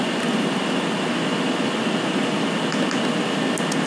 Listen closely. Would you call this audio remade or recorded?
recorded